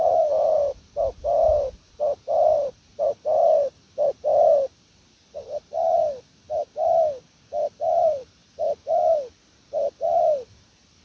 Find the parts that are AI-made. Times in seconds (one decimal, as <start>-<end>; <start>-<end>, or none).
0.0-6.0; 7.8-11.0